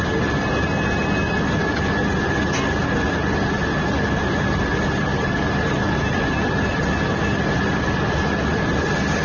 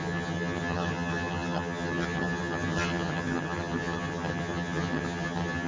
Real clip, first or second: first